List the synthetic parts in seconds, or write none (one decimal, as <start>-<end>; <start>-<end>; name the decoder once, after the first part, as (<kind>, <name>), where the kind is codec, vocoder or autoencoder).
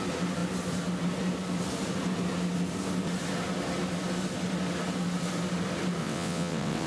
6.0-6.9 (vocoder, WaveNeXt)